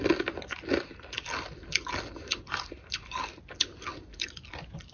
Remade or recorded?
recorded